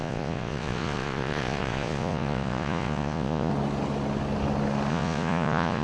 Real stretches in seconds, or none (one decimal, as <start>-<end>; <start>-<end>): 3.5-4.9